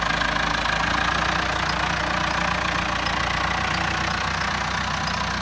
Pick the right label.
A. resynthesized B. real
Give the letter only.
B